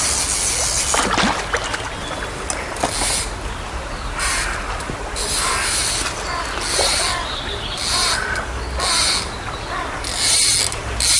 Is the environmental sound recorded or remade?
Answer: recorded